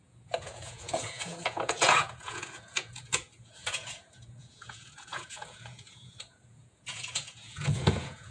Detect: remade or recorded remade